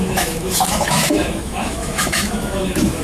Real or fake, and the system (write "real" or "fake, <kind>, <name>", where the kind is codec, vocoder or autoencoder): fake, autoencoder, DAC-VAE